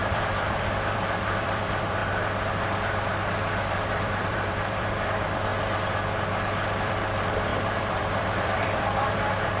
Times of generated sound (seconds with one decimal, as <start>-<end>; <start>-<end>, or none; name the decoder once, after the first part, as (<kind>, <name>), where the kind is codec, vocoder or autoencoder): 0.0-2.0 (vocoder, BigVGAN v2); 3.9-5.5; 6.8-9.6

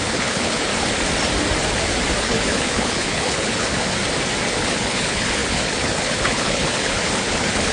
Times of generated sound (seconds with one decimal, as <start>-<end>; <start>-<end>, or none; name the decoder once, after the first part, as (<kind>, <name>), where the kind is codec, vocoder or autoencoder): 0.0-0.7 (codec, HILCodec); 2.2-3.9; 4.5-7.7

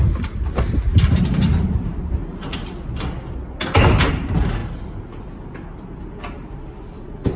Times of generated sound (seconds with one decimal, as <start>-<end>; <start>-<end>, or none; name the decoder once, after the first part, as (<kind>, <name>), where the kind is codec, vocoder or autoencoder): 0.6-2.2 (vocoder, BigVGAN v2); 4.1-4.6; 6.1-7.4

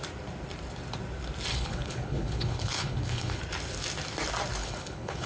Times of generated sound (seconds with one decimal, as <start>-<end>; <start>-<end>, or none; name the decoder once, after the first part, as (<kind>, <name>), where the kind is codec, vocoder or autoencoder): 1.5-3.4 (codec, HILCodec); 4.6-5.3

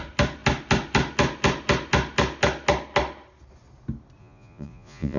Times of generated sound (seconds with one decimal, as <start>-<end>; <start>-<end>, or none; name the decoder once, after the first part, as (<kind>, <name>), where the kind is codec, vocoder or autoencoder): 4.2-5.2 (vocoder, Vocos)

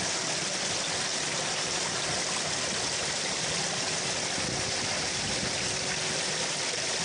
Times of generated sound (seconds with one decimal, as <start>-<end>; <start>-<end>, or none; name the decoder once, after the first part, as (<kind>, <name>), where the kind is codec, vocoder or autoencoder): none

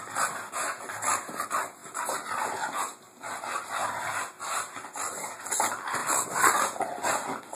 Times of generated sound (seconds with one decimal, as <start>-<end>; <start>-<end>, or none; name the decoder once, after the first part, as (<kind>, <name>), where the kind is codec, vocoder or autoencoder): none